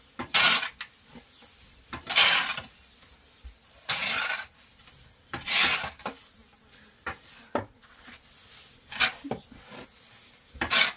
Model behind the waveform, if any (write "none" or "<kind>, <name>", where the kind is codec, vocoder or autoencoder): none